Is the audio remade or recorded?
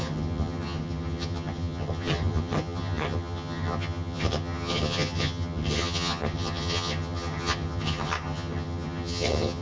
remade